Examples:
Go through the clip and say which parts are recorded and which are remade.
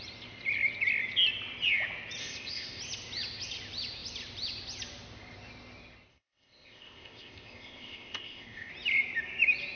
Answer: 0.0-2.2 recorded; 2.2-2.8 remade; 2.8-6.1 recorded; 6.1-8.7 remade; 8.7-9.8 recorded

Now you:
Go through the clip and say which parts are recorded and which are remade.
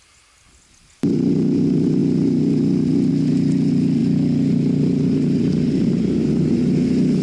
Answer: 0.0-7.2 recorded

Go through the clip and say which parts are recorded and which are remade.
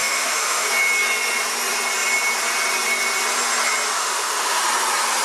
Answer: 0.0-0.7 remade; 0.7-4.0 recorded; 4.0-4.6 remade; 4.6-5.2 recorded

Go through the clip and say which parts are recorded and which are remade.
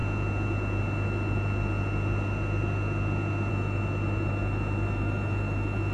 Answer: 0.0-3.5 recorded; 3.5-5.9 remade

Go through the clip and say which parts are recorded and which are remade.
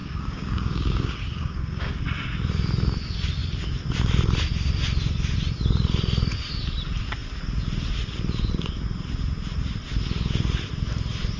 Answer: 0.0-2.0 remade; 2.0-11.4 recorded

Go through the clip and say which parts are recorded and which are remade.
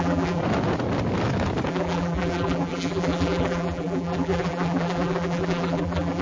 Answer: 0.0-0.4 remade; 0.4-1.7 recorded; 1.7-6.2 remade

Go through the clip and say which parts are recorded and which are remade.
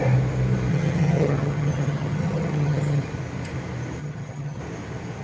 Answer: 0.0-0.7 recorded; 0.7-3.0 remade; 3.0-4.0 recorded; 4.0-4.6 remade; 4.6-5.2 recorded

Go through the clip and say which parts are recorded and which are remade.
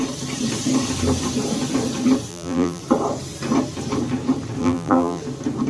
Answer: 0.0-2.3 recorded; 2.3-2.8 remade; 2.8-4.6 recorded; 4.6-5.2 remade; 5.2-5.7 recorded